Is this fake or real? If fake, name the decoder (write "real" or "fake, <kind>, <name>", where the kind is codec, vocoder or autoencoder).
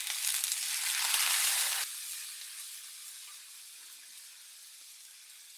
real